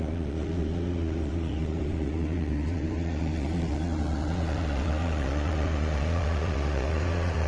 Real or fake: fake